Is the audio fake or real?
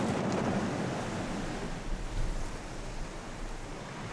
real